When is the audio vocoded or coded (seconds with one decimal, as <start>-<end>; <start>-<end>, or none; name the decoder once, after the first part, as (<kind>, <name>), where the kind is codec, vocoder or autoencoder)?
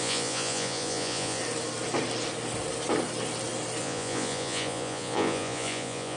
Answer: 0.0-1.4 (vocoder, Vocos); 3.8-6.2